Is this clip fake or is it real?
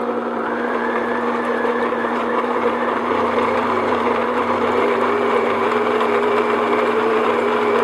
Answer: fake